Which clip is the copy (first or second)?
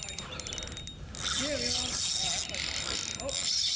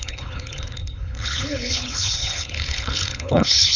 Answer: second